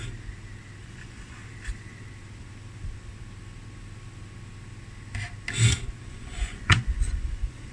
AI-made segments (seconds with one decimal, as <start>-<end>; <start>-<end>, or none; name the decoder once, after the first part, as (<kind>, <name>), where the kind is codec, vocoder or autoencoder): 0.8-1.4 (vocoder, Vocos); 6.0-7.7

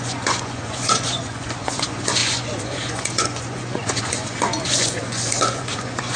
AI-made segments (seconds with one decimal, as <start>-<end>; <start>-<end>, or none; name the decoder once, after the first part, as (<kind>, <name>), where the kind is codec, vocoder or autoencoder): 0.0-6.2 (vocoder, Vocos)

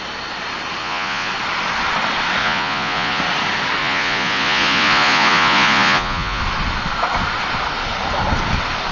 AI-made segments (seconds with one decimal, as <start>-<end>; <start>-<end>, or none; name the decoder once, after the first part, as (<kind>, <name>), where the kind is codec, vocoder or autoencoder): 0.8-1.3 (vocoder, Vocos); 2.4-3.2; 3.8-6.4

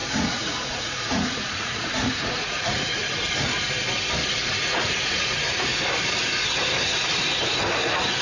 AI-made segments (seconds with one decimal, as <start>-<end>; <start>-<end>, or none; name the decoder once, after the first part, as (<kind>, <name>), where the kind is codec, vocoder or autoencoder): 0.0-3.0 (vocoder, Vocos); 4.7-5.7

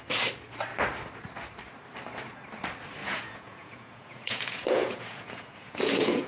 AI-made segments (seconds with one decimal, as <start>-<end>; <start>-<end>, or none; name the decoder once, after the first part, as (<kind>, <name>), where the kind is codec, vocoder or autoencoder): 3.0-6.3 (vocoder, Vocos)

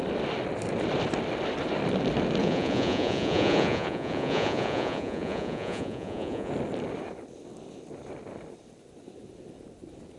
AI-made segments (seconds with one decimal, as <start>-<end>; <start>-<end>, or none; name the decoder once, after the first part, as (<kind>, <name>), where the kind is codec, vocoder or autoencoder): 2.4-6.5 (vocoder, Vocos)

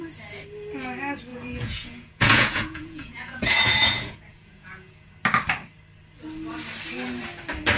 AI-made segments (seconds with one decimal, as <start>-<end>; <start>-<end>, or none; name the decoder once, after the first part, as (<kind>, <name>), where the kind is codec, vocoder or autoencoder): 1.3-5.1 (vocoder, Vocos)